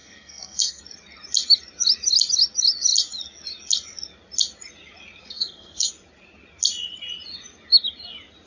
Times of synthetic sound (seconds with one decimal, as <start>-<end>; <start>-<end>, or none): 0.0-0.8; 5.2-5.9